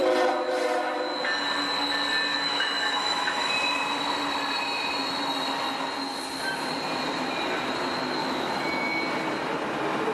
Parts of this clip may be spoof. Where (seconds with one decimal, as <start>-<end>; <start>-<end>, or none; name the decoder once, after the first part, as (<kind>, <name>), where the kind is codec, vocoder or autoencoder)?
2.3-3.5 (autoencoder, DAC-VAE); 8.2-9.0